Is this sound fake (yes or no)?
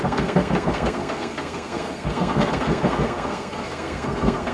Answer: yes